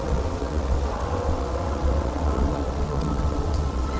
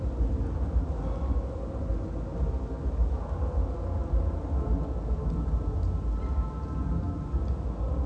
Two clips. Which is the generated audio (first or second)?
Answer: first